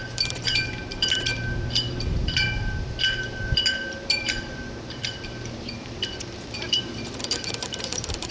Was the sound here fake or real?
fake